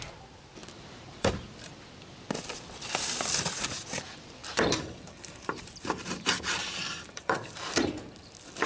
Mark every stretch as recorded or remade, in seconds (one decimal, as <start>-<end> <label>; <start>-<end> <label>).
0.0-0.6 recorded; 0.6-1.3 remade; 1.3-4.4 recorded; 4.4-7.9 remade; 7.9-8.7 recorded